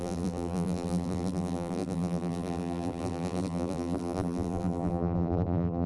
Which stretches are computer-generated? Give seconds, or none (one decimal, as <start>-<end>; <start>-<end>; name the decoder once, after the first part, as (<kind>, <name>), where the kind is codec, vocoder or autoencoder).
0.0-5.9 (vocoder, BigVGAN v2)